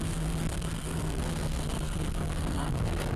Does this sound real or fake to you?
fake